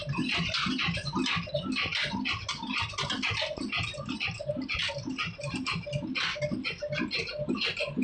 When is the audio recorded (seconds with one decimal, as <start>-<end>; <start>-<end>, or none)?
0.0-8.0